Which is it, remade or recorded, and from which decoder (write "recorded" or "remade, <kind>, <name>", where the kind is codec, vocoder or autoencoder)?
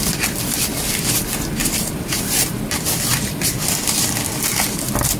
remade, vocoder, BigVGAN v2